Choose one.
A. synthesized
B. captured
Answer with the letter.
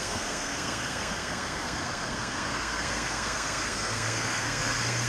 A